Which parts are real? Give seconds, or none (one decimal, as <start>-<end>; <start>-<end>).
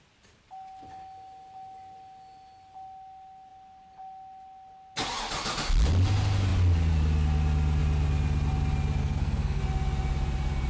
0.0-9.0; 9.6-10.7